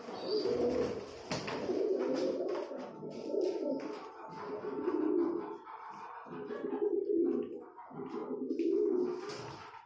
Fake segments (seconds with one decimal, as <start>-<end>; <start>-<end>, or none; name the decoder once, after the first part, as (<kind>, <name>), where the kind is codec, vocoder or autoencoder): none

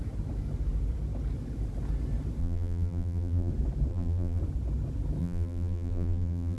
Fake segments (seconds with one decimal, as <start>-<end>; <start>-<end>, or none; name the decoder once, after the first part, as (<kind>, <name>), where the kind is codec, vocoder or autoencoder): 2.4-3.5 (vocoder, BigVGAN v2); 3.9-4.4; 5.2-6.6

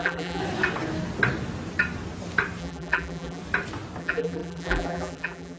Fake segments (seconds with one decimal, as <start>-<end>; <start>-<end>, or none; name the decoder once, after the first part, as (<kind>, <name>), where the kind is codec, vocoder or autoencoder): 0.0-0.4 (vocoder, BigVGAN v2); 2.6-3.4; 4.0-5.6

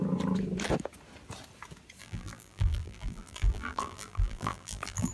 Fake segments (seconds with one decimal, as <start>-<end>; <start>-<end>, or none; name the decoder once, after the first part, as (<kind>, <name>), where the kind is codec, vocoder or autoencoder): 2.0-5.1 (vocoder, BigVGAN v2)

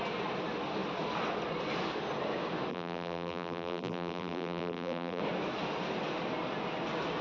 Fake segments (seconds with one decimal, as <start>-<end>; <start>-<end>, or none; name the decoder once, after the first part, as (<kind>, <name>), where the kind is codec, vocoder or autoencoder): 2.7-5.2 (vocoder, BigVGAN v2)

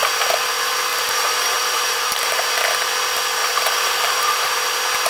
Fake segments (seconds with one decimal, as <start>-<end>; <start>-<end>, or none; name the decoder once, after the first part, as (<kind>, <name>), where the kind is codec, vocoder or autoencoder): 0.9-2.4 (vocoder, BigVGAN v2); 3.4-4.5